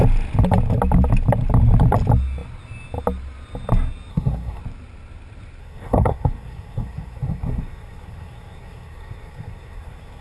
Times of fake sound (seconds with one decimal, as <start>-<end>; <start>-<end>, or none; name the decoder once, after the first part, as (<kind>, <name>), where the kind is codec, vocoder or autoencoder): 4.1-4.6 (codec, SNAC); 5.6-10.2